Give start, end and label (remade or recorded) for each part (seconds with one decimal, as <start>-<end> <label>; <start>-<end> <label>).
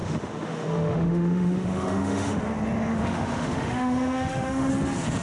0.0-2.4 remade; 2.4-2.9 recorded; 2.9-4.7 remade; 4.7-5.2 recorded